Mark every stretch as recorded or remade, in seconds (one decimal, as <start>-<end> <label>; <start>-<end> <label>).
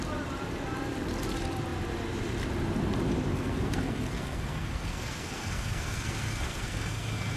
0.0-3.3 recorded; 3.3-7.4 remade